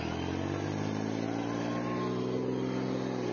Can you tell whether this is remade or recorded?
recorded